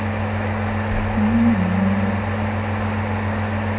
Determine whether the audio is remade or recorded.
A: recorded